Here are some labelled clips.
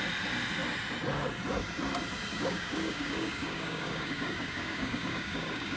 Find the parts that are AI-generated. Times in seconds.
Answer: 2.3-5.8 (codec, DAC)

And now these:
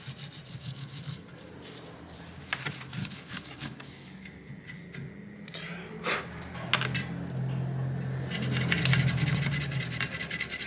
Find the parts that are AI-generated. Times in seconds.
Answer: 0.5-1.5 (codec, DAC); 3.0-4.5